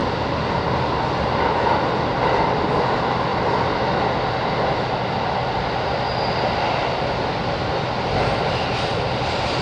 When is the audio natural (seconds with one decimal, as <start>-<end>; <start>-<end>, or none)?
0.0-9.6